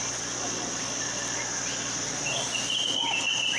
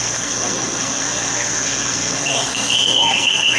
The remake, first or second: second